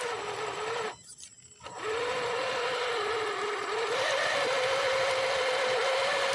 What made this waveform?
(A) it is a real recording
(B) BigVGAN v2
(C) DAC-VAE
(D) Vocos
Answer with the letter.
A